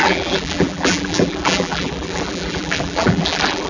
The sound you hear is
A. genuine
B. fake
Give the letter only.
B